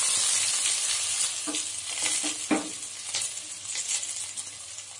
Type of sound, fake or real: real